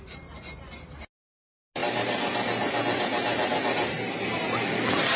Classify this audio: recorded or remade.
recorded